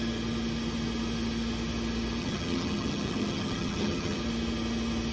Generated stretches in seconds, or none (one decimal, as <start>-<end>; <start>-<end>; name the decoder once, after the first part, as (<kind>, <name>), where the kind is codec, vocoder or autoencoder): 2.2-4.2 (vocoder, HiFi-GAN)